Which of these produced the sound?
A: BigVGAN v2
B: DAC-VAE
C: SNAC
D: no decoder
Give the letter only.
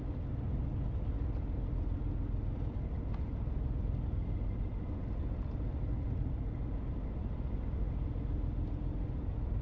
D